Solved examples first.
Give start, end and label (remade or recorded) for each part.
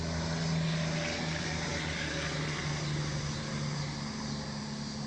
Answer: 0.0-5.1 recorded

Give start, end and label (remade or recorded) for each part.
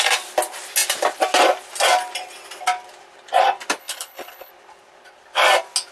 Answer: 0.0-3.8 recorded; 3.8-4.5 remade; 4.5-5.9 recorded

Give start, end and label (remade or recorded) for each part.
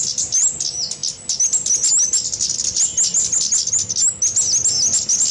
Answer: 0.0-5.3 recorded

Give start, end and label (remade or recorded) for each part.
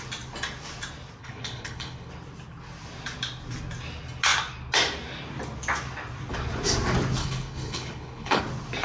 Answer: 0.0-1.2 recorded; 1.2-2.1 remade; 2.1-7.2 recorded; 7.2-8.4 remade; 8.4-8.8 recorded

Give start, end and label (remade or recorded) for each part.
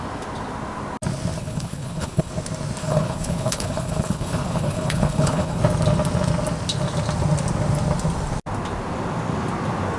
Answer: 0.0-1.4 recorded; 1.4-2.3 remade; 2.3-2.8 recorded; 2.8-5.6 remade; 5.6-10.0 recorded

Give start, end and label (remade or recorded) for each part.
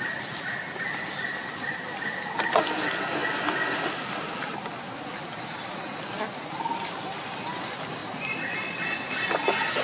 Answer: 0.0-9.8 recorded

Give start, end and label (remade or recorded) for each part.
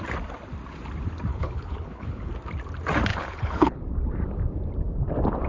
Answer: 0.0-1.3 recorded; 1.3-2.3 remade; 2.3-3.1 recorded; 3.1-3.8 remade; 3.8-5.5 recorded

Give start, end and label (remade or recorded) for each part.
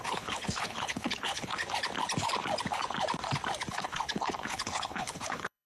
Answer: 0.0-1.5 remade; 1.5-3.7 recorded; 3.7-5.7 remade